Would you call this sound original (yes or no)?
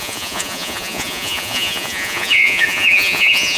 no